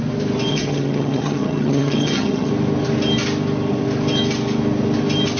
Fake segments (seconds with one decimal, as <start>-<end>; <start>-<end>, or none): 0.5-2.5

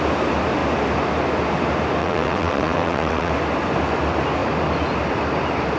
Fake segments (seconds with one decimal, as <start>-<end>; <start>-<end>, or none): 2.0-3.3